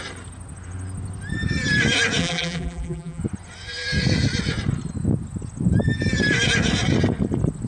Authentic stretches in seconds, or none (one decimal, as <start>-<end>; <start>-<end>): 0.0-2.2; 3.2-7.7